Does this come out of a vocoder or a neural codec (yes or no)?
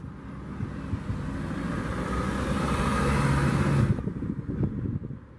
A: no